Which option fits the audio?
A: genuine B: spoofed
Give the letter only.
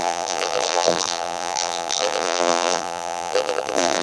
B